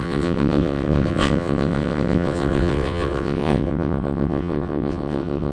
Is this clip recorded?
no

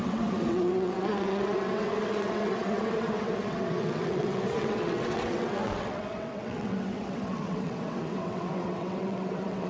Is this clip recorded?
no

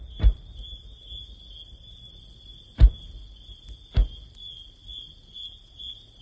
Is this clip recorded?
yes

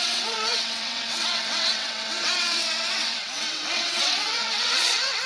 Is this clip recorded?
no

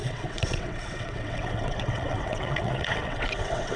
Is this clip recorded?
no